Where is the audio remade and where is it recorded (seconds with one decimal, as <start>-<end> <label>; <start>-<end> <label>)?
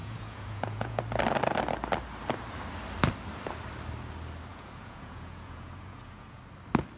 0.0-1.0 remade; 1.0-4.5 recorded; 4.5-6.4 remade; 6.4-7.0 recorded